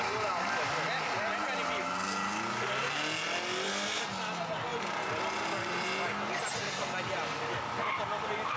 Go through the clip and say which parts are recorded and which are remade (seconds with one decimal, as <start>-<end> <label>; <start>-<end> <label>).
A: 0.0-8.6 recorded